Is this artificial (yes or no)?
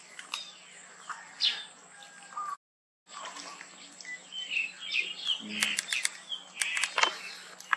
no